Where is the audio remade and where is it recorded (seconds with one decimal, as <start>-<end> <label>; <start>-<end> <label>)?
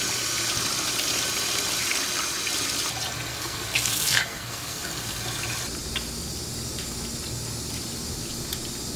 0.0-3.3 recorded; 3.3-5.2 remade; 5.2-9.0 recorded